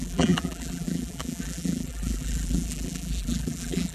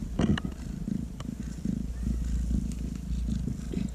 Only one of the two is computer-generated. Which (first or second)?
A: first